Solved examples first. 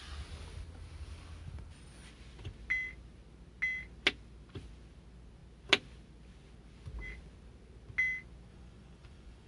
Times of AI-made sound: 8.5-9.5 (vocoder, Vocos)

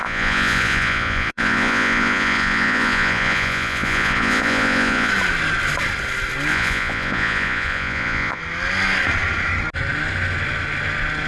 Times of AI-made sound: 0.0-5.1 (vocoder, Vocos); 6.5-8.4

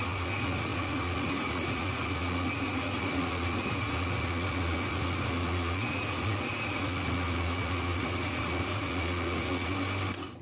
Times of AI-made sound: 0.0-9.7 (vocoder, Vocos)

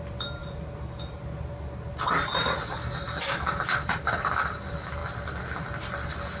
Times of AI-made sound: 0.0-0.4 (vocoder, BigVGAN v2); 2.2-6.4

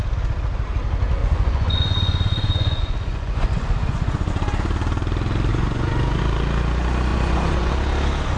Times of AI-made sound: 1.2-4.3 (vocoder, Vocos); 5.5-6.2; 7.1-7.7

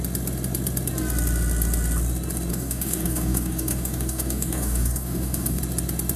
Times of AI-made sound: 2.5-5.6 (codec, DAC)

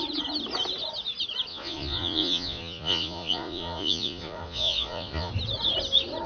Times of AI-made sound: 1.5-5.3 (vocoder, Vocos)

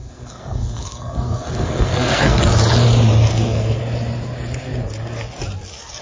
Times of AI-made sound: 0.0-2.4 (codec, SNAC); 3.3-3.8